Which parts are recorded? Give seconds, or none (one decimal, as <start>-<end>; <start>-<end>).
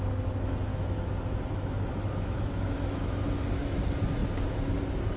0.0-0.7; 3.3-5.2